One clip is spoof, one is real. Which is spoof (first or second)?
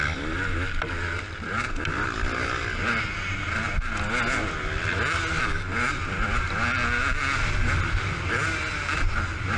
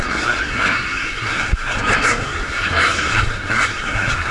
second